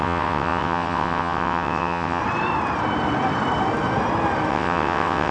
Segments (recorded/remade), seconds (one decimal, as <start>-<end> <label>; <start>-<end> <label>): 0.0-2.2 remade; 2.2-4.5 recorded; 4.5-5.3 remade